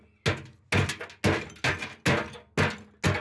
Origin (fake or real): real